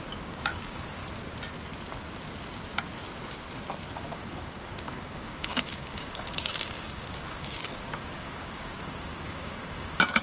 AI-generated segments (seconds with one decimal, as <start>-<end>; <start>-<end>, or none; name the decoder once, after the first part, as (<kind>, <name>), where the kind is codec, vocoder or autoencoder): 0.0-1.0 (codec, DAC); 4.1-10.2